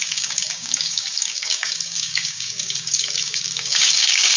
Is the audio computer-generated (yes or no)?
yes